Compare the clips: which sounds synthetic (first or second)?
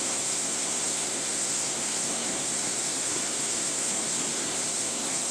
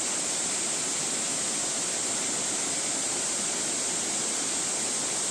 first